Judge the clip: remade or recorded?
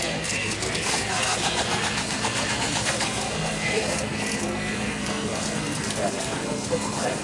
remade